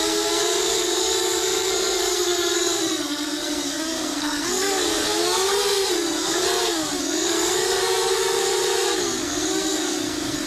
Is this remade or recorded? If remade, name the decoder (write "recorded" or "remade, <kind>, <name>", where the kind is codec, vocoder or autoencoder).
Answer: remade, codec, SNAC